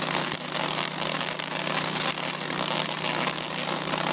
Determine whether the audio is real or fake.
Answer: real